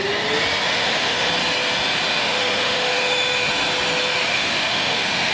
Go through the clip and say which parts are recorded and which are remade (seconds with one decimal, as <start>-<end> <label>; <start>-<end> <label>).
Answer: 0.0-0.7 recorded; 0.7-1.3 remade; 1.3-2.2 recorded; 2.2-3.5 remade; 3.5-4.3 recorded; 4.3-5.3 remade